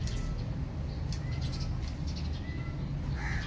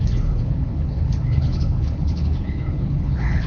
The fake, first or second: second